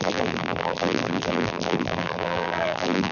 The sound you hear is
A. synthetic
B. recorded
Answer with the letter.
A